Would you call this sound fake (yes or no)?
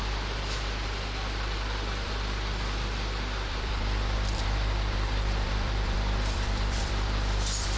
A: yes